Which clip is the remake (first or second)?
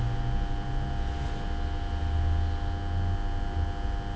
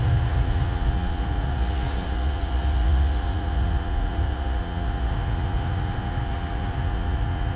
second